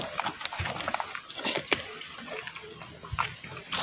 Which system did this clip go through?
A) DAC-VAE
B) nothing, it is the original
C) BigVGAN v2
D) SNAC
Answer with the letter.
B